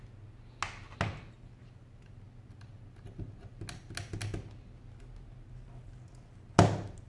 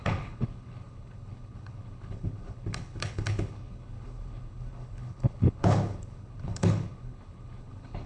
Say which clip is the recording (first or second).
first